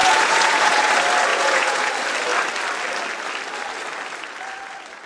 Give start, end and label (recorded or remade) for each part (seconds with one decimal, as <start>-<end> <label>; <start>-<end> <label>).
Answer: 0.0-0.9 remade; 0.9-1.3 recorded; 1.3-1.9 remade; 1.9-5.1 recorded